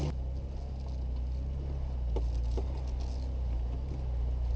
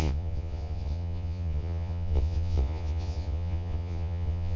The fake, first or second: second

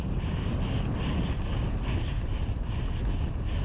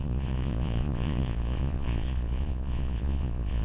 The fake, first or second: second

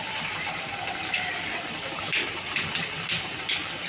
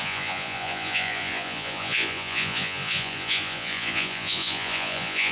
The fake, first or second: second